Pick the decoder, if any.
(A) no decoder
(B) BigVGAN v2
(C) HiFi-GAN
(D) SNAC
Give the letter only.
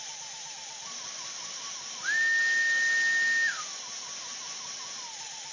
A